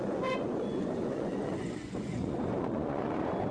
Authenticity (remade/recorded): remade